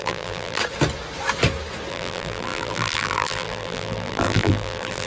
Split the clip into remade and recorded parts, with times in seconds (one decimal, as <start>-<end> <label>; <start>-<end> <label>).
0.0-0.6 remade; 0.6-1.9 recorded; 1.9-5.1 remade